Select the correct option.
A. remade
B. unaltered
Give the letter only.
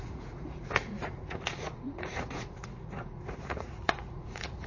A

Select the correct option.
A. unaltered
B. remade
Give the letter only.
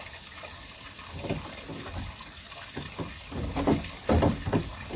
A